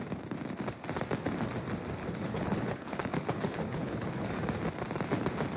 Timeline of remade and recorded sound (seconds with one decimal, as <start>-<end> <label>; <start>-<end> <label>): 0.0-2.0 recorded; 2.0-4.3 remade; 4.3-5.6 recorded